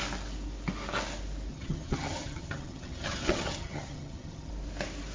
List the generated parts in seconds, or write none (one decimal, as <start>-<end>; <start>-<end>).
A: 1.5-4.5